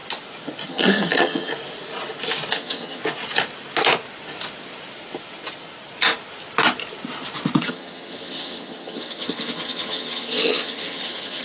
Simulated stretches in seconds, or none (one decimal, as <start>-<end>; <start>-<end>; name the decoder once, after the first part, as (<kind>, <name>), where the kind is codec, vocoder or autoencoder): 0.7-1.5 (vocoder, HiFi-GAN); 2.5-3.0; 7.6-11.4